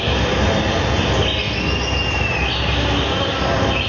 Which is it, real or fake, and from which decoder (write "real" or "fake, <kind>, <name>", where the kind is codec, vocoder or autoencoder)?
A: real